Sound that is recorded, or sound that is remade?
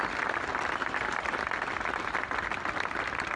recorded